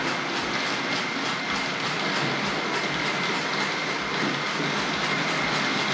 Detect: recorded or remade recorded